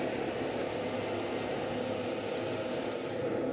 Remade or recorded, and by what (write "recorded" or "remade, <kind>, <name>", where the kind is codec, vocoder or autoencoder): recorded